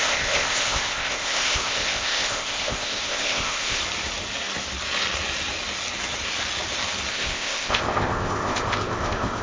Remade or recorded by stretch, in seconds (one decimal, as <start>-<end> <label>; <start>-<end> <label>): 0.0-3.8 remade; 3.8-7.1 recorded; 7.1-9.4 remade